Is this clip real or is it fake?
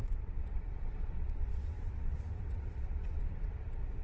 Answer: fake